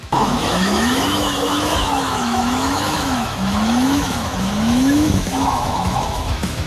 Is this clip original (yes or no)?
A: no